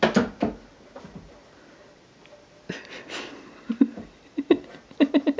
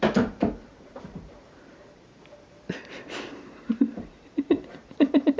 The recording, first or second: first